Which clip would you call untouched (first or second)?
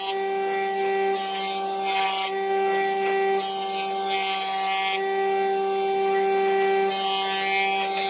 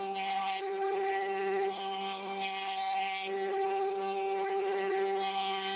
first